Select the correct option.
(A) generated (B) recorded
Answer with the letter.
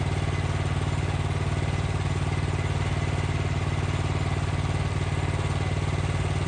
B